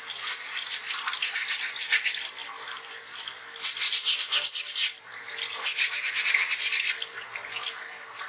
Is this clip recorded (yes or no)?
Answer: yes